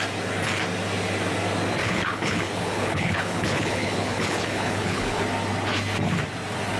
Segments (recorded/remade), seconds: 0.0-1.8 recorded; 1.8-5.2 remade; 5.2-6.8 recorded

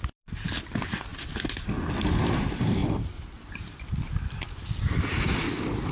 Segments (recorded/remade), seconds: 0.0-5.9 recorded

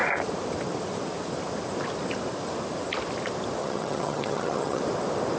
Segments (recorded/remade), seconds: 0.0-3.6 recorded; 3.6-4.8 remade; 4.8-5.4 recorded

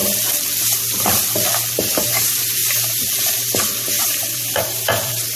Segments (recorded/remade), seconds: 0.0-1.7 recorded; 1.7-5.4 remade

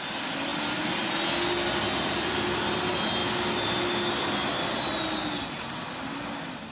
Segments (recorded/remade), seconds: 0.0-0.5 recorded; 0.5-1.2 remade; 1.2-6.7 recorded

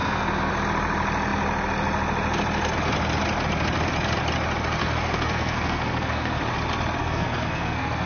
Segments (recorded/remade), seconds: 0.0-0.5 remade; 0.5-4.8 recorded; 4.8-6.4 remade; 6.4-7.0 recorded; 7.0-8.1 remade

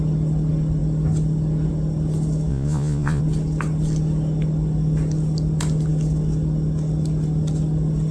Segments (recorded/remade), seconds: 0.0-2.5 recorded; 2.5-3.2 remade; 3.2-8.1 recorded

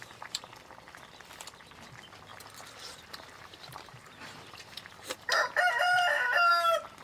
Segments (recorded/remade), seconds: 0.0-0.5 remade; 0.5-2.3 recorded; 2.3-6.5 remade; 6.5-7.0 recorded